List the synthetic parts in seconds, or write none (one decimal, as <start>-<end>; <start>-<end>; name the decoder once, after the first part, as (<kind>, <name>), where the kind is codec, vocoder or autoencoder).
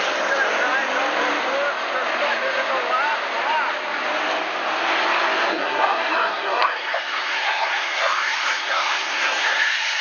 5.5-10.0 (codec, SNAC)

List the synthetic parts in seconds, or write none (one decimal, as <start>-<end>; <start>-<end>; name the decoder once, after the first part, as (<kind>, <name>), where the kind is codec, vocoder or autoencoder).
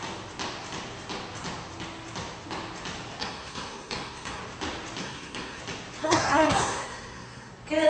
3.2-4.4 (codec, SNAC); 5.0-5.6; 6.0-7.5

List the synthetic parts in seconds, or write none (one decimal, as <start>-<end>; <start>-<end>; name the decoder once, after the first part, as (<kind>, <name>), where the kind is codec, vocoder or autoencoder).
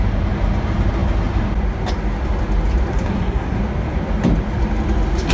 2.9-3.6 (codec, SNAC)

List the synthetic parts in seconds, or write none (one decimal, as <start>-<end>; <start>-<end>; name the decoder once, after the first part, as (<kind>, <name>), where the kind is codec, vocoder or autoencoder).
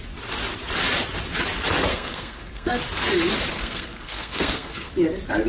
1.9-2.8 (codec, SNAC); 3.5-4.9